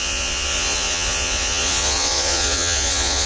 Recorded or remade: remade